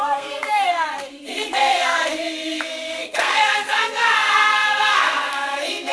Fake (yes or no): yes